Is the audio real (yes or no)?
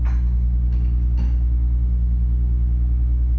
yes